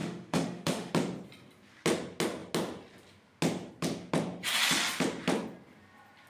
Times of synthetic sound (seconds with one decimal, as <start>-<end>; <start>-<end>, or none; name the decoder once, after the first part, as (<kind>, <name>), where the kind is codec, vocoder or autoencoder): 0.0-0.9 (autoencoder, DAC-VAE)